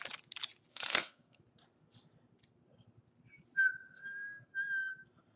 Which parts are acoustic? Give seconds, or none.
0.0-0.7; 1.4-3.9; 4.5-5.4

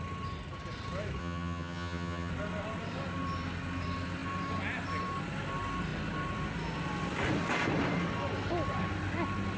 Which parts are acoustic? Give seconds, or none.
0.0-1.2; 2.3-9.6

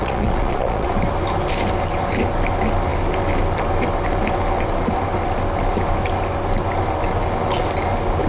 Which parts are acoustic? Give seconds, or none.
0.9-8.3

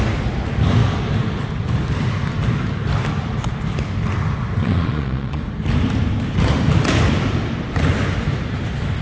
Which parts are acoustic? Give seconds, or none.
0.0-4.6; 5.4-9.0